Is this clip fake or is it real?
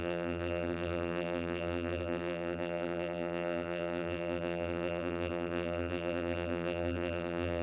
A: fake